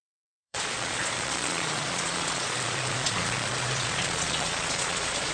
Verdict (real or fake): fake